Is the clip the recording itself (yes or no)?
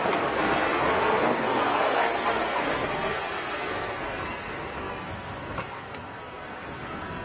no